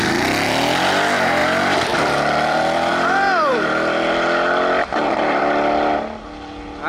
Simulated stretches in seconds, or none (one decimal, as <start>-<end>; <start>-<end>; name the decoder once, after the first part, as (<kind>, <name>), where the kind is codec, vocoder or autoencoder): 1.4-2.9 (vocoder, BigVGAN v2); 3.5-5.4